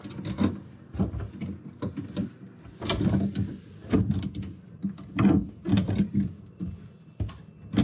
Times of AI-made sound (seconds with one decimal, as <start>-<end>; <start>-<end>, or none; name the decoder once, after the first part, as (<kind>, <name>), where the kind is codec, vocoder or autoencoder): none